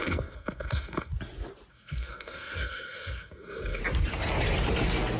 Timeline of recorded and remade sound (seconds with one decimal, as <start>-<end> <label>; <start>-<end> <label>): 0.0-1.1 remade; 1.1-1.7 recorded; 1.7-3.8 remade; 3.8-5.2 recorded